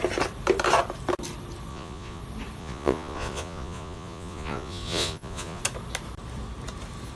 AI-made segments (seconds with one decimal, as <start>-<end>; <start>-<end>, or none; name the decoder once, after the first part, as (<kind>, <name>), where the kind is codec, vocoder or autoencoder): 1.7-2.2 (vocoder, Vocos); 2.6-5.6